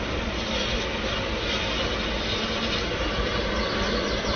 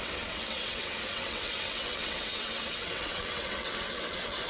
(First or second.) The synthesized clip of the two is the second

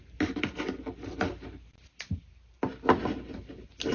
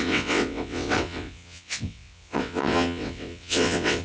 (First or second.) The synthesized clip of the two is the second